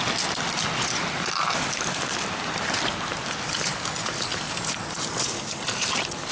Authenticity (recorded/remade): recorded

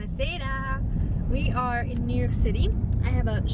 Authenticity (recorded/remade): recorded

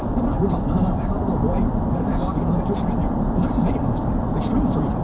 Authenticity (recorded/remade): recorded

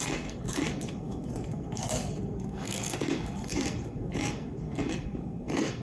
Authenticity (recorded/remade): remade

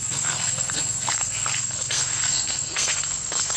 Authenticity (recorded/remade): remade